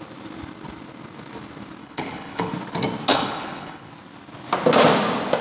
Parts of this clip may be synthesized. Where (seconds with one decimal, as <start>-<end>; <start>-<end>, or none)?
1.8-2.5; 3.1-3.9